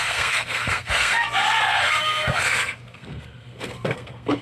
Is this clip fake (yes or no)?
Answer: yes